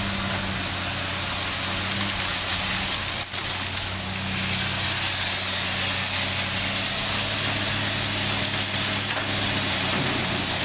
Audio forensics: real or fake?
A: real